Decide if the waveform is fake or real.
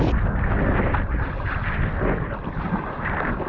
real